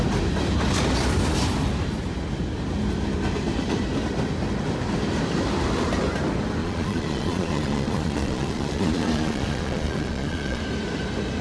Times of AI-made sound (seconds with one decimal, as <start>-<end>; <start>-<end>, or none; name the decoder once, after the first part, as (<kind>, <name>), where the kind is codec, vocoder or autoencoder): 6.6-10.6 (vocoder, Vocos)